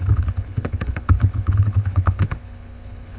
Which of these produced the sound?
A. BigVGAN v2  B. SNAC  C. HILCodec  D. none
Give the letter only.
C